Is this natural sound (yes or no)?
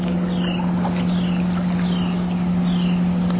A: yes